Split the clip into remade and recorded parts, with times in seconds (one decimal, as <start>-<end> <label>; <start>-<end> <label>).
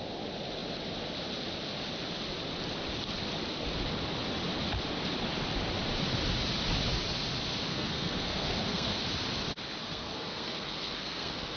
0.0-7.7 recorded; 7.7-9.0 remade; 9.0-9.8 recorded; 9.8-11.6 remade